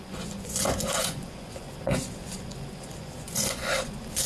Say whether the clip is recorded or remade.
remade